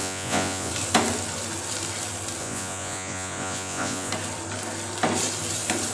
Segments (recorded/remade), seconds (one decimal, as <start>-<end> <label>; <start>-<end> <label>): 0.0-0.7 remade; 0.7-2.4 recorded; 2.4-4.1 remade; 4.1-5.9 recorded